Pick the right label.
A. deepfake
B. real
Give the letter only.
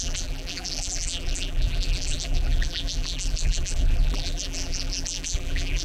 A